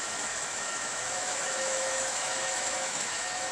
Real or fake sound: fake